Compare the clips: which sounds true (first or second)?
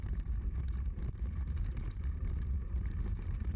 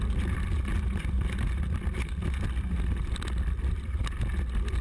second